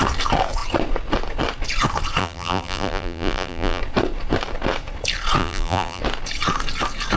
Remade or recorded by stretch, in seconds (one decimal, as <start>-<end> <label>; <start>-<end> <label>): 0.0-2.2 recorded; 2.2-3.8 remade; 3.8-5.4 recorded; 5.4-6.0 remade; 6.0-7.2 recorded